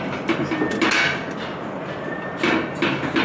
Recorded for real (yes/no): no